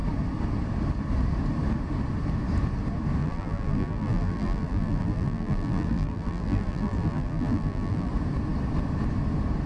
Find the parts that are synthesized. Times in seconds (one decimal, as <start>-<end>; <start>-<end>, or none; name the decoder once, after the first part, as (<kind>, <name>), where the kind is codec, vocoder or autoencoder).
3.2-8.1 (vocoder, BigVGAN v2)